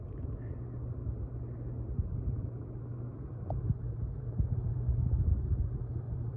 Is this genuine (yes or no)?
yes